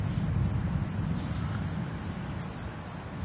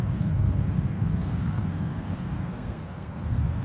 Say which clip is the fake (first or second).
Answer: second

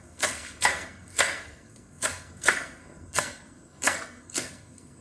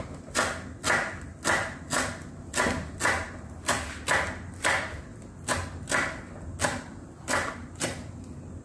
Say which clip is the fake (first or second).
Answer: first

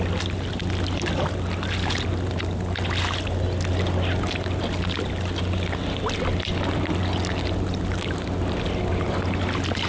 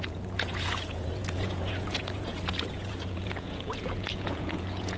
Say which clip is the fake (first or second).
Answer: second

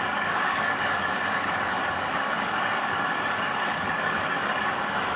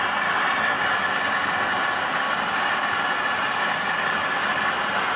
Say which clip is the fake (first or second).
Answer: first